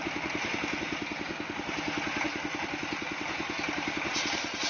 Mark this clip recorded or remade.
recorded